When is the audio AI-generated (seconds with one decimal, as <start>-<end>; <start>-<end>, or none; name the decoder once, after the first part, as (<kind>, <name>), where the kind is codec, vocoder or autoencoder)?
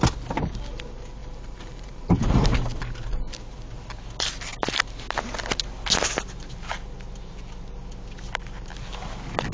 1.2-2.2 (vocoder, BigVGAN v2)